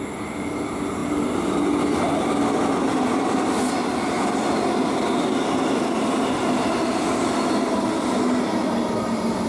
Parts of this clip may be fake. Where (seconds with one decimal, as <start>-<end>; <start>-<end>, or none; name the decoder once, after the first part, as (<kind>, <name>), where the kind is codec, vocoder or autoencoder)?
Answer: none